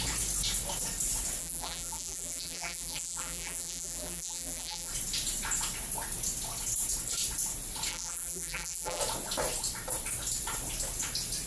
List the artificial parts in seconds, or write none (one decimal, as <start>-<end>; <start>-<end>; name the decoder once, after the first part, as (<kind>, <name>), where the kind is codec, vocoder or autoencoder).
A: 1.4-4.9 (vocoder, BigVGAN v2); 7.9-9.0